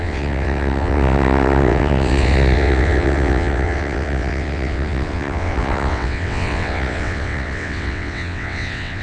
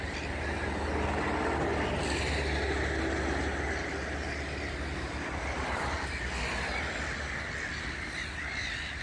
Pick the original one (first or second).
second